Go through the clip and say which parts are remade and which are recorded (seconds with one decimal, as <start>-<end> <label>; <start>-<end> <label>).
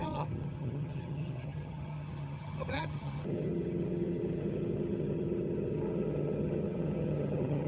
0.0-7.7 remade